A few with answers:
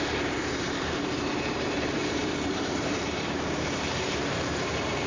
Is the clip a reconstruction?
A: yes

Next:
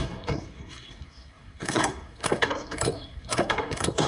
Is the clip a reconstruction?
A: yes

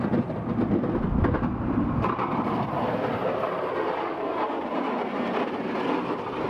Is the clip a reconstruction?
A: no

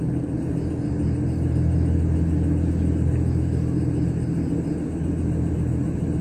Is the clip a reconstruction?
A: no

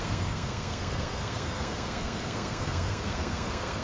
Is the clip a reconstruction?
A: yes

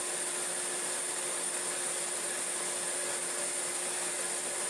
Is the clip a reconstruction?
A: no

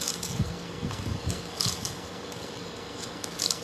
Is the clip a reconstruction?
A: yes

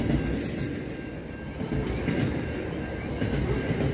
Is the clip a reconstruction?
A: no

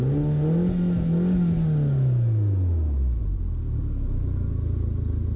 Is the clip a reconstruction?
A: no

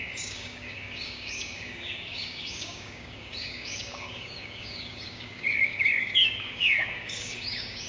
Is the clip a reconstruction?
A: yes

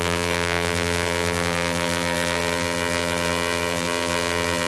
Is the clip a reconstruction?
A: yes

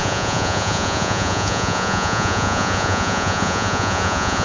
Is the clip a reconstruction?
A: yes